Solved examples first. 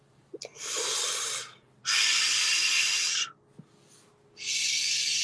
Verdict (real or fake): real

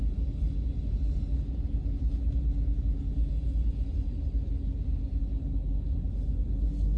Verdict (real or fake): real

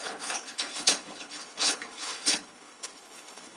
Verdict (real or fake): fake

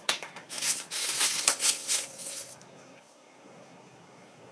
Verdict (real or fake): fake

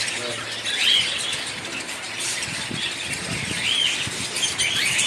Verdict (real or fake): real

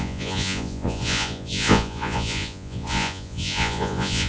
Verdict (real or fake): fake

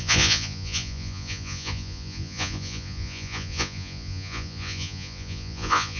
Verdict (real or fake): fake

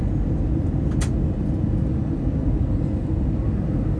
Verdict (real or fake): real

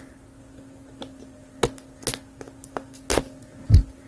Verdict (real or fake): real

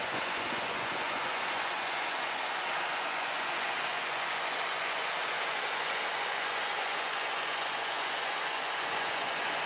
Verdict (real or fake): fake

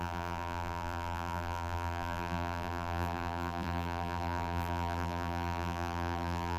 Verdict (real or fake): fake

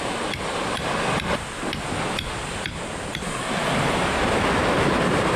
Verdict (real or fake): real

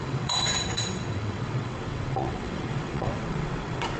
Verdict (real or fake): fake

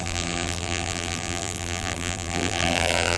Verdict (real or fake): fake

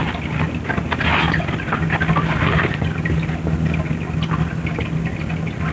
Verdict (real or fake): real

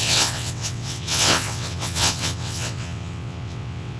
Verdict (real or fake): fake